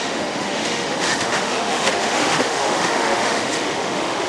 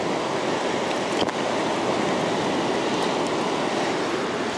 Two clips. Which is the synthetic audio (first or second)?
first